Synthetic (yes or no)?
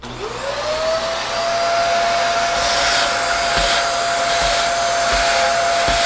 no